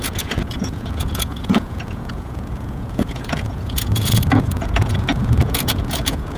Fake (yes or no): yes